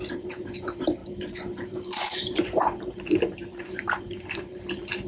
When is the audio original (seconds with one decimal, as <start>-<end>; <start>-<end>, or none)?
none